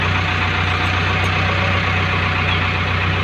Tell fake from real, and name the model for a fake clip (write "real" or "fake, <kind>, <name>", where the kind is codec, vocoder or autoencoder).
real